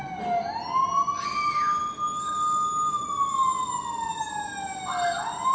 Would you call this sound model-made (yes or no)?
no